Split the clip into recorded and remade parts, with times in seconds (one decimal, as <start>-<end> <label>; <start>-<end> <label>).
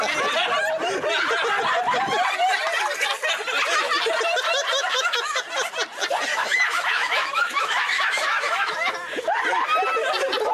0.0-4.8 recorded; 4.8-5.4 remade; 5.4-6.3 recorded; 6.3-8.9 remade; 8.9-10.5 recorded